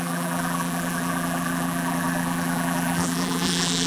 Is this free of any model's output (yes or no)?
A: no